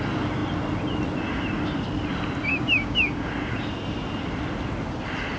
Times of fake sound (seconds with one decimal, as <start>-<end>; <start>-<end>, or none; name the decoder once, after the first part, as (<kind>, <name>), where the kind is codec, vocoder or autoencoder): 2.5-3.3 (codec, DAC)